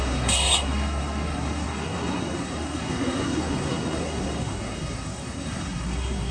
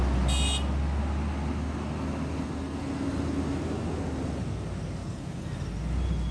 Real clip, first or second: second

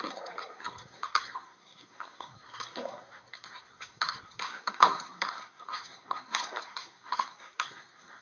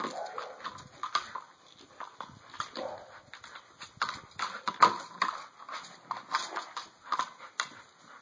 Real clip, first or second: second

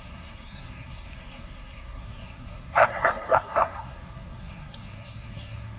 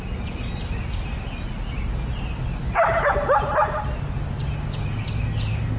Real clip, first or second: second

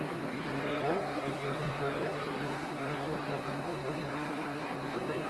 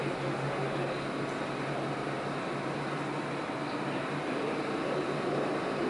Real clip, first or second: second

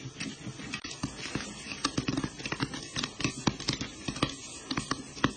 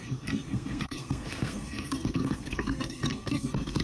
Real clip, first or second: first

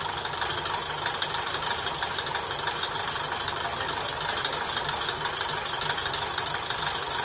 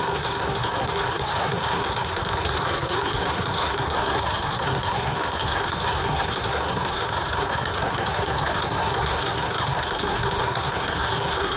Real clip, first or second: first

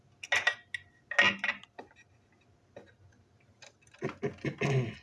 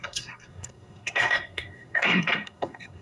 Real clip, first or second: first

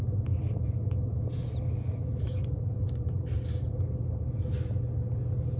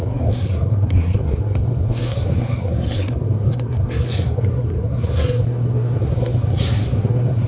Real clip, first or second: first